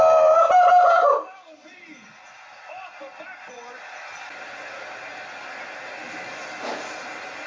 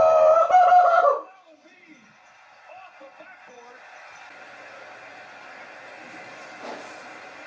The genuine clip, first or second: first